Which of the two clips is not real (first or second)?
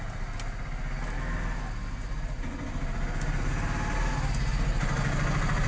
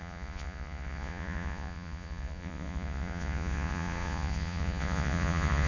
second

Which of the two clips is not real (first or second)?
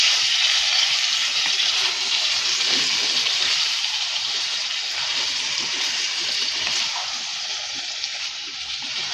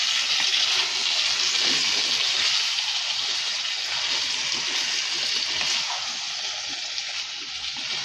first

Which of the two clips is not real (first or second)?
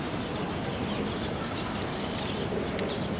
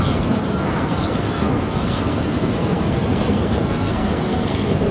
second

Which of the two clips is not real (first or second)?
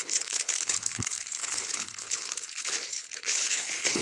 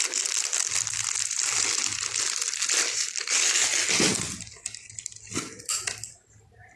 first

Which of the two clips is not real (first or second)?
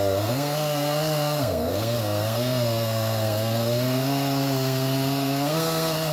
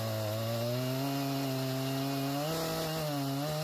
first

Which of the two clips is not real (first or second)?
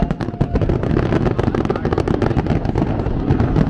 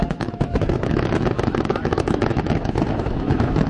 second